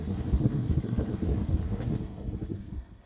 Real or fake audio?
fake